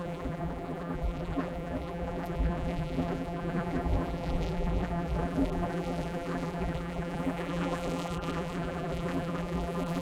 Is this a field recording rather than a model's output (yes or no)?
no